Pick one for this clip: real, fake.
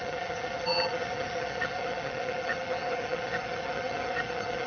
fake